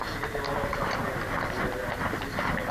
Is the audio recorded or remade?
recorded